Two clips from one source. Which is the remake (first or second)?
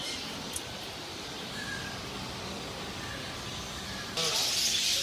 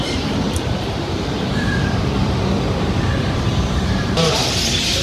second